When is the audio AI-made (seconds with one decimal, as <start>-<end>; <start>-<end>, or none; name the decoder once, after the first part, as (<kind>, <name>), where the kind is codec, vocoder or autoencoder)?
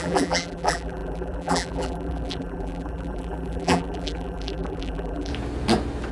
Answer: 0.0-5.3 (vocoder, BigVGAN v2)